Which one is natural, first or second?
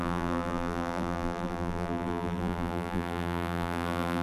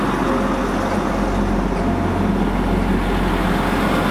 second